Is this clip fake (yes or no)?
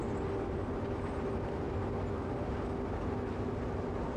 no